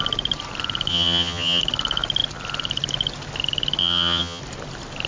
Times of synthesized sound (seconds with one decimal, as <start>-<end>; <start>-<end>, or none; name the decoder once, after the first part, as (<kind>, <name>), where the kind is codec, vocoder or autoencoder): 0.9-1.6 (vocoder, HiFi-GAN); 3.8-4.4